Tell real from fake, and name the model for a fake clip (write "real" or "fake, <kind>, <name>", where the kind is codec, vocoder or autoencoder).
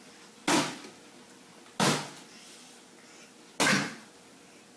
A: real